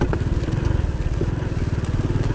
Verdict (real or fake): real